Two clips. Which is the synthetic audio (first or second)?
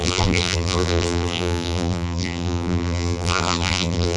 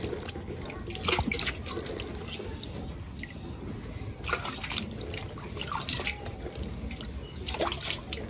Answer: first